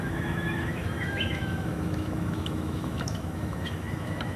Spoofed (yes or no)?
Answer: yes